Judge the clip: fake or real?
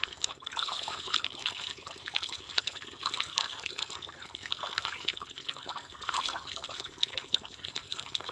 fake